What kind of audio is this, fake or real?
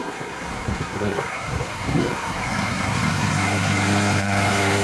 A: fake